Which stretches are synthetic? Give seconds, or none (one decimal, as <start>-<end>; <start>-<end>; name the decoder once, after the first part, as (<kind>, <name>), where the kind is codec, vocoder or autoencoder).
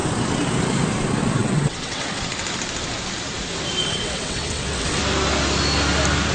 1.4-2.2 (vocoder, WaveNeXt); 3.8-5.0